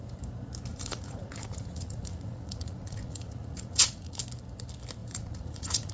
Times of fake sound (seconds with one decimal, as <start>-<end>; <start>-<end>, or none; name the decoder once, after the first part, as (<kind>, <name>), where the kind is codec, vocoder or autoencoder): 0.7-4.2 (vocoder, Vocos); 5.0-5.9